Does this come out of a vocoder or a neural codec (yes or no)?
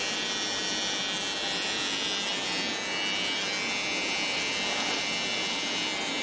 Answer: no